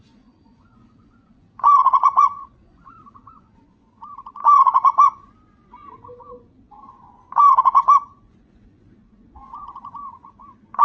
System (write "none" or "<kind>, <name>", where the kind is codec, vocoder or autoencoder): vocoder, Vocos